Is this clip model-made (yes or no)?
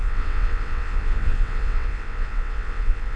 yes